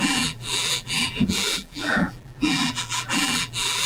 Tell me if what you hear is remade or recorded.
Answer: remade